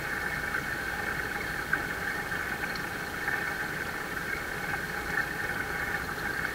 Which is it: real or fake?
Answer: real